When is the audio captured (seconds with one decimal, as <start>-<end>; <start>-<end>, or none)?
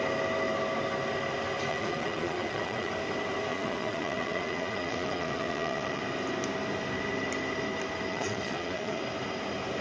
0.0-1.7; 2.9-3.5; 6.0-8.1; 9.0-9.8